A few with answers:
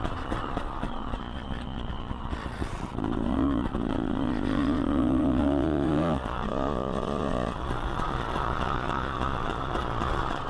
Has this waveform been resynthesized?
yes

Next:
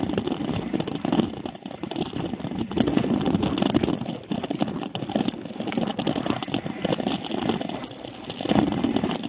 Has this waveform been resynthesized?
no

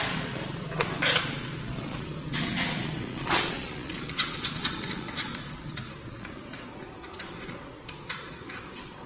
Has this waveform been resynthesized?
yes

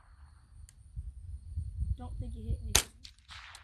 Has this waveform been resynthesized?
no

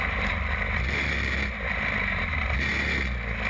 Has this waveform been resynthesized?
no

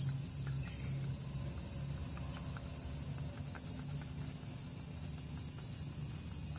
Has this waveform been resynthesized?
no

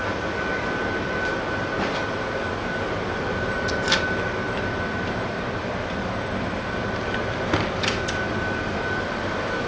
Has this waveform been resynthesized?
no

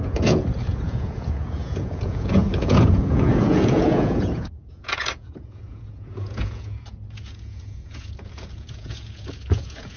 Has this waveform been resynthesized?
yes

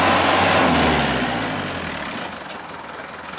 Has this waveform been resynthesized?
no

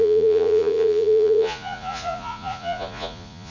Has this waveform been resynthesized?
yes